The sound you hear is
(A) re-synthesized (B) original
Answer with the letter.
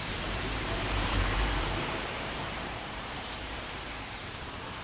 A